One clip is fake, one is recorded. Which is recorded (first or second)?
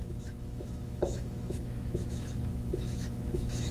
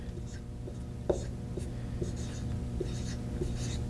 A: second